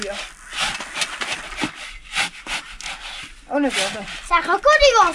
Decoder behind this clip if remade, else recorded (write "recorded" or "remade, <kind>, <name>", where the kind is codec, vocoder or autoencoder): recorded